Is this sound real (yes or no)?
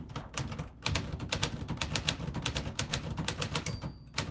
yes